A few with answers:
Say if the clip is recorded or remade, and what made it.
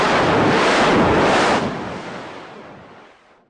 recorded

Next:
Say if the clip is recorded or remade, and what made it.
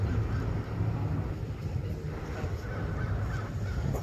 recorded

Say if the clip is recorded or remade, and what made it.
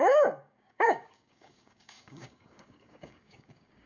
remade, codec, DAC